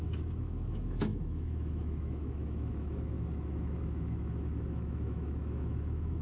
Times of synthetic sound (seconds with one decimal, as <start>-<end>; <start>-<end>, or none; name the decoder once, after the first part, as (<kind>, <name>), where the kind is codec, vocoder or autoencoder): 0.0-6.2 (autoencoder, DAC-VAE)

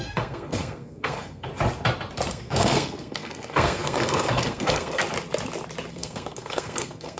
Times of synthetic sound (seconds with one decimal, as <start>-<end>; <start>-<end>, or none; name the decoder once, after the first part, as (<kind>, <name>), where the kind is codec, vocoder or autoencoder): 0.0-1.5 (codec, SNAC); 2.3-5.0; 5.9-7.2

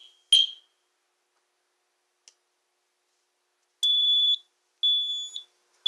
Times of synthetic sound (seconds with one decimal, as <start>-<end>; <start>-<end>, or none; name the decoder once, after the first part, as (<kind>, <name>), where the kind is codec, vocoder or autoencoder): 3.9-4.5 (vocoder, BigVGAN v2)

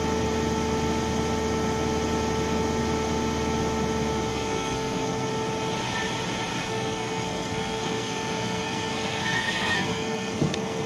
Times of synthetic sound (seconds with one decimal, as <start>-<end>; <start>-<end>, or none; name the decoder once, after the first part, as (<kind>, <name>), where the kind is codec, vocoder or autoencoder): 4.3-5.3 (codec, SNAC); 6.6-10.9

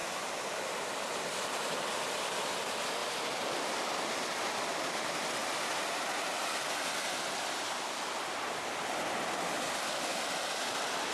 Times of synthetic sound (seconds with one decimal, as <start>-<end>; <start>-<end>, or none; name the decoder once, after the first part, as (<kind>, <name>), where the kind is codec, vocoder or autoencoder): 0.0-1.7 (vocoder, BigVGAN v2); 3.0-3.6

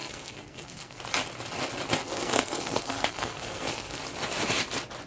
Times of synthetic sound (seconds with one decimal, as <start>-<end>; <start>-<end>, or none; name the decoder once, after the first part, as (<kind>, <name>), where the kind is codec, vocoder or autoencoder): 0.0-1.0 (codec, SNAC); 2.0-4.0

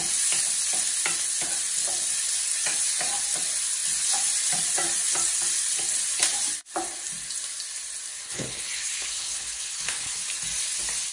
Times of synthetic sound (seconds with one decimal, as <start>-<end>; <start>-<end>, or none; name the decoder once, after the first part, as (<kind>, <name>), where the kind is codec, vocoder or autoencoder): 8.1-10.2 (codec, HILCodec)

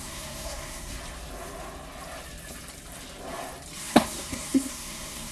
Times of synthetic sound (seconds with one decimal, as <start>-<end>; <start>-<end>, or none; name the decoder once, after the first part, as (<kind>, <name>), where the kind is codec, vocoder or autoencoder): 0.0-1.0 (codec, SNAC); 3.8-5.3